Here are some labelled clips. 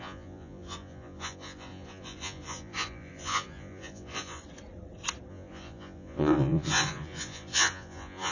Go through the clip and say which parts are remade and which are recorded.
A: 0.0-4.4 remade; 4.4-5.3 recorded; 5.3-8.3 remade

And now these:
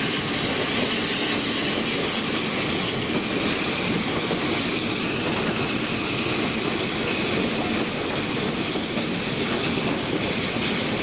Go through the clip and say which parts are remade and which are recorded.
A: 0.0-11.0 recorded

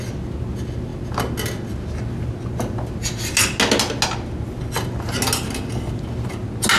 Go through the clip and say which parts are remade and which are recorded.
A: 0.0-6.8 recorded

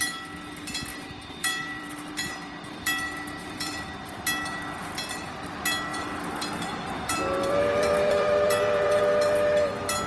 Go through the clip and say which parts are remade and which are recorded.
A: 0.0-0.9 recorded; 0.9-4.1 remade; 4.1-5.9 recorded; 5.9-9.0 remade; 9.0-10.1 recorded

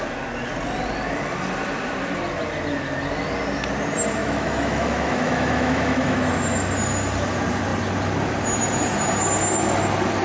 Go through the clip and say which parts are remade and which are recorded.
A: 0.0-4.2 recorded; 4.2-6.3 remade; 6.3-10.2 recorded

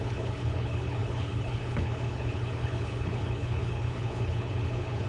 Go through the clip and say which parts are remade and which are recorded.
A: 0.0-5.1 remade

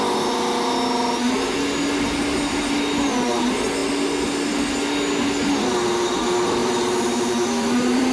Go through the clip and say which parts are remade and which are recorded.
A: 0.0-6.6 recorded; 6.6-8.1 remade

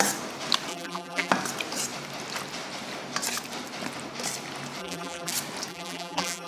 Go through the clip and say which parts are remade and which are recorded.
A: 0.0-0.7 recorded; 0.7-1.3 remade; 1.3-4.8 recorded; 4.8-5.3 remade; 5.3-5.7 recorded; 5.7-6.5 remade